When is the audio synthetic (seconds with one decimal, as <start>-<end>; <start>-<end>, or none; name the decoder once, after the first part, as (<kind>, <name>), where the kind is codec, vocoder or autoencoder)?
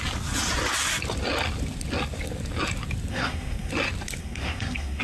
3.1-3.7 (codec, SNAC); 4.2-5.0